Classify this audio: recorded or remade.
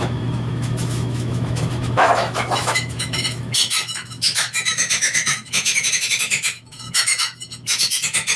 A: remade